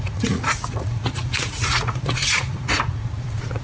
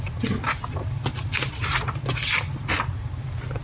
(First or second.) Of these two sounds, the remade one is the first